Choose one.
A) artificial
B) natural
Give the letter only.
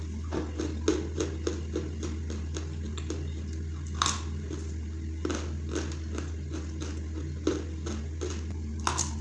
B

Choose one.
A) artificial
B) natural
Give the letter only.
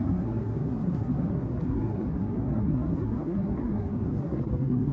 A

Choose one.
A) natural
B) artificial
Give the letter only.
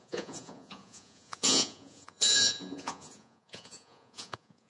B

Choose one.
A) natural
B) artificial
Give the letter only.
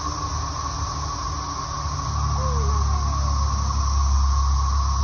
A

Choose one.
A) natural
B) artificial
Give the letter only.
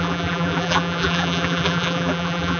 B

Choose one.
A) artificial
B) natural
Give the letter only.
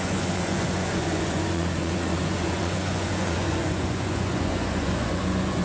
A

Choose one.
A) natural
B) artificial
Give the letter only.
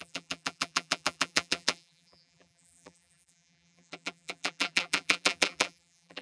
B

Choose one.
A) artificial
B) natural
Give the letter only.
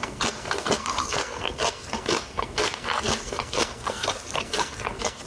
A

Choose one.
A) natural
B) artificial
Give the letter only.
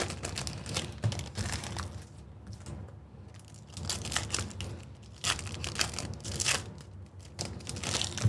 A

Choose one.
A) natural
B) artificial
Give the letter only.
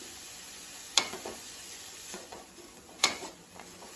B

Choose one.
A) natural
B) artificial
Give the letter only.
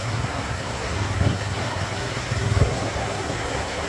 B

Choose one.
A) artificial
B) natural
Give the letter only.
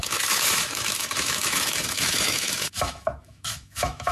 A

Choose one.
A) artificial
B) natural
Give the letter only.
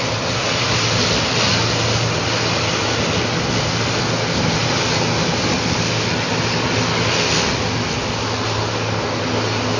B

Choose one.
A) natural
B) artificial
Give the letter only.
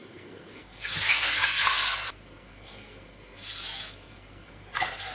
B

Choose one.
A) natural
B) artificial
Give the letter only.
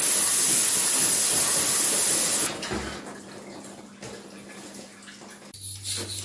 A